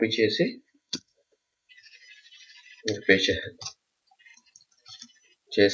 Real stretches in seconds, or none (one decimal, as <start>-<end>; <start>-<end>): 0.0-0.5; 1.7-5.7